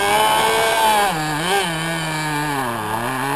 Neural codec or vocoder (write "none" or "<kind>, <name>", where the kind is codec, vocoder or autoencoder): none